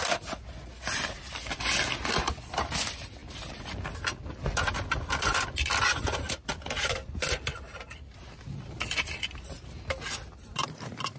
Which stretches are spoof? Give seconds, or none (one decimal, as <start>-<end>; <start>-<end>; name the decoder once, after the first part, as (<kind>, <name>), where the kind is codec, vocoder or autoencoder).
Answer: none